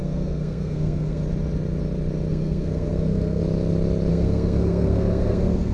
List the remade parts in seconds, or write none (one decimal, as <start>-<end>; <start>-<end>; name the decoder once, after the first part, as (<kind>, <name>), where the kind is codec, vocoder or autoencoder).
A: 0.0-1.2 (codec, SNAC); 2.3-3.4; 4.1-5.7